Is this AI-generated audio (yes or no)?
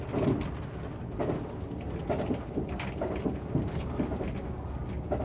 no